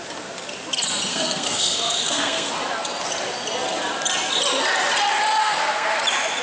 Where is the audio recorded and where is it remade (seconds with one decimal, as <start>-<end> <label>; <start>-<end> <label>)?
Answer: 0.0-1.1 recorded; 1.1-2.5 remade; 2.5-5.4 recorded; 5.4-6.0 remade; 6.0-6.4 recorded

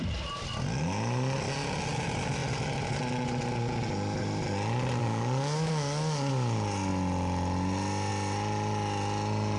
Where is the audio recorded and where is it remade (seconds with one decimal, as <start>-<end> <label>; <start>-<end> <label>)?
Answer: 0.0-5.0 recorded; 5.0-6.3 remade; 6.3-9.6 recorded

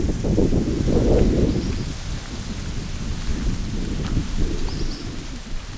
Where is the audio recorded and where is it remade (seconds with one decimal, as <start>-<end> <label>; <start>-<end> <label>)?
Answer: 0.0-0.4 recorded; 0.4-1.2 remade; 1.2-5.8 recorded

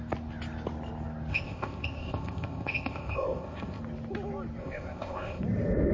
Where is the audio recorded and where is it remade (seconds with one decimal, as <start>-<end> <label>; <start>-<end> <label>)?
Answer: 0.0-1.3 recorded; 1.3-3.8 remade; 3.8-4.6 recorded; 4.6-5.4 remade; 5.4-5.9 recorded

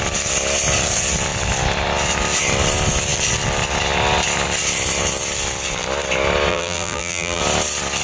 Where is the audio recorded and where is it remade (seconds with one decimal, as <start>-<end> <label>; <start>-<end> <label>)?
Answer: 0.0-6.5 recorded; 6.5-7.4 remade; 7.4-8.0 recorded

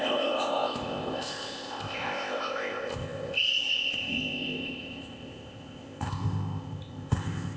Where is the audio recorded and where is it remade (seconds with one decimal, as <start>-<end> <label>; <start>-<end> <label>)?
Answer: 0.0-7.6 remade

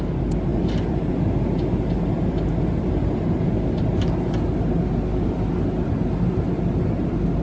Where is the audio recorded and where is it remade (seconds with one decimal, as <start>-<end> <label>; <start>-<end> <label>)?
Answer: 0.0-7.4 recorded

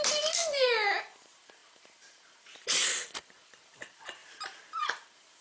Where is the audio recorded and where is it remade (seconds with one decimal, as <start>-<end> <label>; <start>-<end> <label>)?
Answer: 0.0-0.4 remade; 0.4-1.0 recorded; 1.0-5.4 remade